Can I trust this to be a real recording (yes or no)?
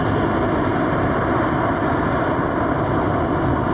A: yes